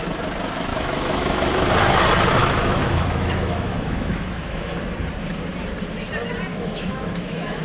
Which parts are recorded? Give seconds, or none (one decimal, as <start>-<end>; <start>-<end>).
0.0-0.7; 1.7-2.4; 4.7-6.5